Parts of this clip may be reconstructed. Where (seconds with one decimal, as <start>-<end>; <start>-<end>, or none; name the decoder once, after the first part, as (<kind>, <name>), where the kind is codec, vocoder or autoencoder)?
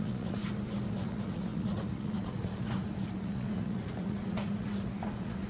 0.0-0.4 (vocoder, Vocos); 0.9-5.5